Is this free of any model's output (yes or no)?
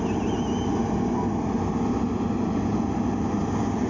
yes